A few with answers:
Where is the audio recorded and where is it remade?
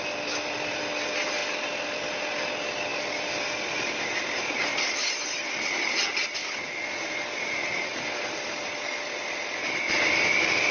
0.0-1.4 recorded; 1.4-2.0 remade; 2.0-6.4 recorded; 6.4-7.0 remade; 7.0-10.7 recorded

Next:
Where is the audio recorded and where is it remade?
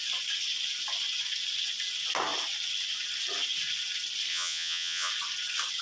0.0-4.3 recorded; 4.3-5.1 remade; 5.1-5.8 recorded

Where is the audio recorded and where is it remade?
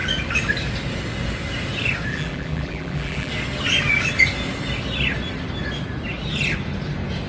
0.0-2.1 recorded; 2.1-3.3 remade; 3.3-7.3 recorded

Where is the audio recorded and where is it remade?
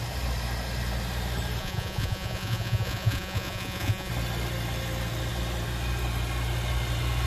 0.0-1.6 recorded; 1.6-4.1 remade; 4.1-7.3 recorded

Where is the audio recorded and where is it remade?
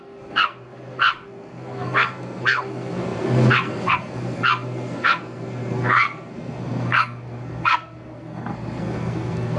0.0-9.6 remade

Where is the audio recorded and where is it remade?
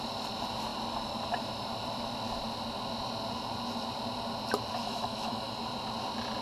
0.0-4.8 recorded; 4.8-5.5 remade; 5.5-6.4 recorded